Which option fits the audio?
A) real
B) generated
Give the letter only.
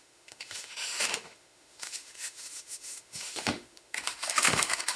B